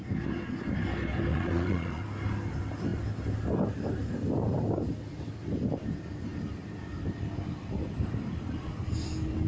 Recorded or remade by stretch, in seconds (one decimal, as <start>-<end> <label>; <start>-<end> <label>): 0.0-1.3 recorded; 1.3-2.0 remade; 2.0-9.5 recorded